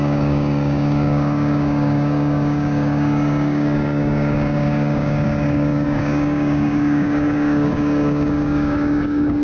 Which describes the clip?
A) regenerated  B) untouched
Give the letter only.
A